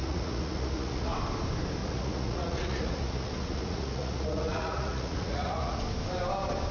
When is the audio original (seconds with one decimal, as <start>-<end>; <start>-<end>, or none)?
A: 1.1-1.8; 5.8-6.7